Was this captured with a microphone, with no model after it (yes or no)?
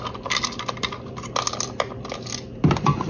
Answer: yes